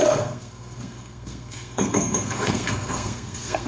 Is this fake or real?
fake